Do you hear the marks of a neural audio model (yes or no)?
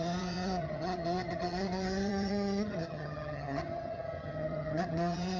yes